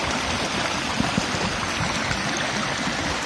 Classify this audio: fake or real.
real